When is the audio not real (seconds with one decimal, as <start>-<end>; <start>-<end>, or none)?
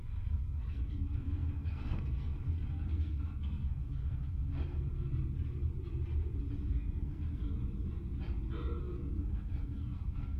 0.0-5.1; 6.7-7.6; 8.8-10.4